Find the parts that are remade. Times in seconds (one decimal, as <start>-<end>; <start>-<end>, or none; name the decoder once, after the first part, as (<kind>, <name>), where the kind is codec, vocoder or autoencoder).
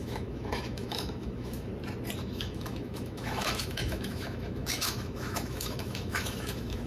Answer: 0.0-1.7 (autoencoder, DAC-VAE); 2.2-6.9